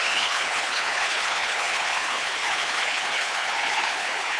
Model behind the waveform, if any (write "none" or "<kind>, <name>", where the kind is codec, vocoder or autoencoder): codec, HILCodec